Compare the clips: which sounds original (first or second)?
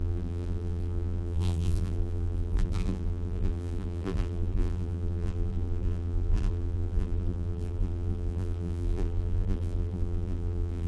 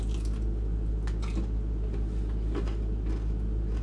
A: second